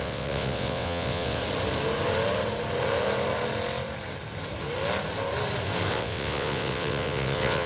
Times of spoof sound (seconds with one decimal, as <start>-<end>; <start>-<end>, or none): 0.0-1.4; 5.9-7.7